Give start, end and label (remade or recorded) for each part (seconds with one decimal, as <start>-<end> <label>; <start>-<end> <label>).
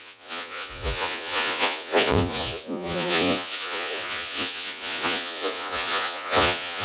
0.0-6.8 remade